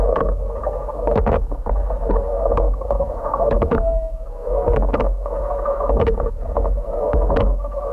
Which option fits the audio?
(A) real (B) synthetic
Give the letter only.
B